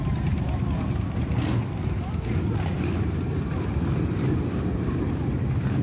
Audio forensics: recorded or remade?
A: remade